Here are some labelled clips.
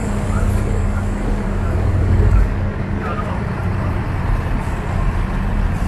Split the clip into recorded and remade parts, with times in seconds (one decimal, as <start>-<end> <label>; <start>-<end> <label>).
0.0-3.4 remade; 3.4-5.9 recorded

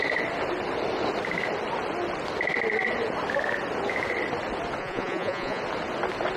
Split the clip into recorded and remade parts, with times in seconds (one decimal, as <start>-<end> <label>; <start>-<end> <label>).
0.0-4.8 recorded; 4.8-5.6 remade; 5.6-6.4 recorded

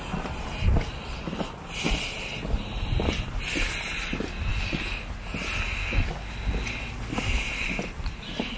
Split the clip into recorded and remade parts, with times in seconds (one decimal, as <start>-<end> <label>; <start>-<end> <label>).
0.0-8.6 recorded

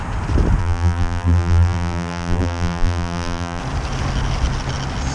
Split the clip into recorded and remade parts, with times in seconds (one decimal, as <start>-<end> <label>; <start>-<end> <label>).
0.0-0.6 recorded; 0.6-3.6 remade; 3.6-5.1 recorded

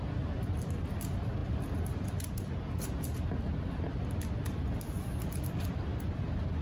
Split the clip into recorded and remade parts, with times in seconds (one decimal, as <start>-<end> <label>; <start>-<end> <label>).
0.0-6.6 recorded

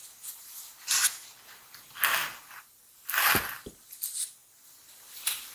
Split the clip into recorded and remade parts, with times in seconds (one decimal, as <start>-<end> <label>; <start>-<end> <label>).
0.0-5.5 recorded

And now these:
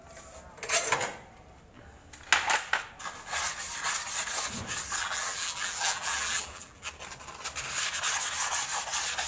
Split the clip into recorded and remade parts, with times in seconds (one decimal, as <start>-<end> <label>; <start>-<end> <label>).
0.0-5.0 recorded; 5.0-6.9 remade; 6.9-9.3 recorded

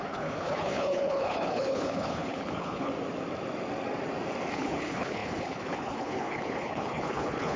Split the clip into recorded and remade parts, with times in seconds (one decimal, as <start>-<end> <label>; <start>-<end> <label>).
0.0-2.9 remade; 2.9-4.5 recorded; 4.5-7.6 remade